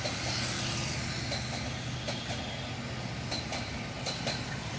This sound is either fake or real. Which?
real